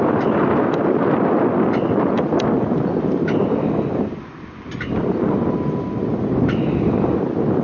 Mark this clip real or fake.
real